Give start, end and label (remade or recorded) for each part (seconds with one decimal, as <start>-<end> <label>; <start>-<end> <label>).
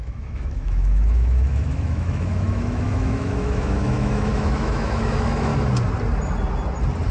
0.0-5.5 remade; 5.5-7.1 recorded